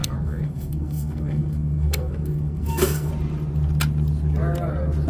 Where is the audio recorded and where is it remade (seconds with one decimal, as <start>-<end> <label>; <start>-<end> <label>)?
0.0-3.1 remade; 3.1-5.1 recorded